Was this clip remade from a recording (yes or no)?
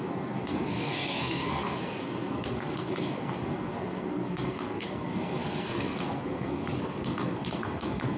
yes